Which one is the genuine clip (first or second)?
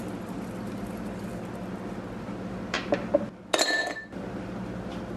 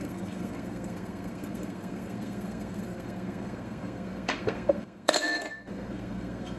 first